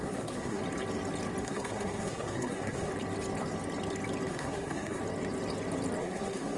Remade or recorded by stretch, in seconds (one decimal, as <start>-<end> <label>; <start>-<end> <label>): 0.0-0.6 remade; 0.6-1.4 recorded; 1.4-2.9 remade; 2.9-4.3 recorded; 4.3-5.0 remade; 5.0-6.0 recorded; 6.0-6.6 remade